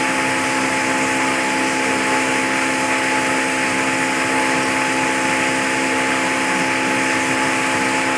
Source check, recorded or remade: recorded